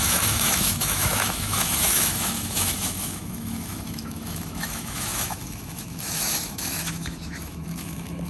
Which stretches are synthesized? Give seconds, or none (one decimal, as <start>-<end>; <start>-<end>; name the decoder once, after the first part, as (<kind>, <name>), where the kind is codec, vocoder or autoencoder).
0.0-8.3 (autoencoder, DAC-VAE)